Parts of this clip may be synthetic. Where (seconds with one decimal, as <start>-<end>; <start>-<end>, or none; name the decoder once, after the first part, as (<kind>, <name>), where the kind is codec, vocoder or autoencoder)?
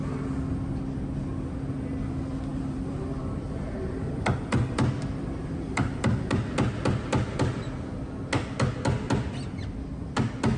2.5-6.3 (vocoder, BigVGAN v2)